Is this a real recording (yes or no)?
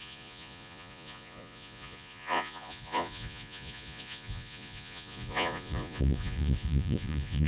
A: no